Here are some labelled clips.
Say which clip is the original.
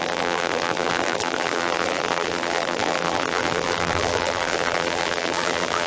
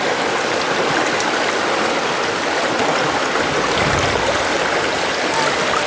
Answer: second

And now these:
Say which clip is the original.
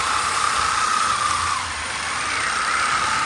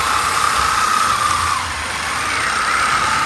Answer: second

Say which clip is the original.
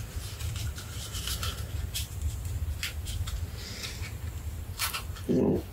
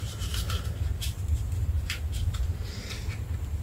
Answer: second